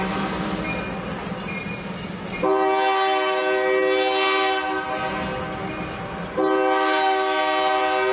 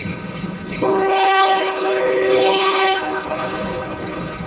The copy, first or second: second